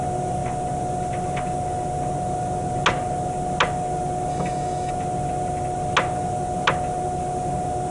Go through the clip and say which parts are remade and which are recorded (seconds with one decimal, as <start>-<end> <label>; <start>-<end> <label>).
0.0-4.3 recorded; 4.3-4.9 remade; 4.9-7.9 recorded